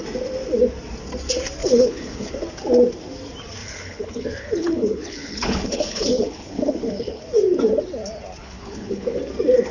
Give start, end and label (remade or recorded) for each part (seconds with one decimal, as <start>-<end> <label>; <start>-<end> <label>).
0.0-1.6 recorded; 1.6-2.3 remade; 2.3-3.6 recorded; 3.6-7.2 remade; 7.2-8.4 recorded; 8.4-9.2 remade; 9.2-9.7 recorded